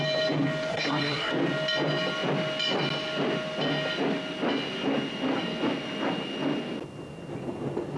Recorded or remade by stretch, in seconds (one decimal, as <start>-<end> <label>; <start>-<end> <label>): 0.0-0.7 recorded; 0.7-1.3 remade; 1.3-8.0 recorded